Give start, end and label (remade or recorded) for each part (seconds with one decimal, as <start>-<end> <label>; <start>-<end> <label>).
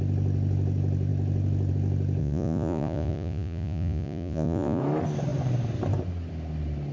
0.0-2.2 recorded; 2.2-4.8 remade; 4.8-6.9 recorded